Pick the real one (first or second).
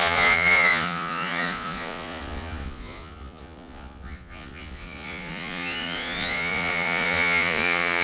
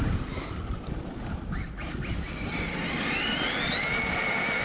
second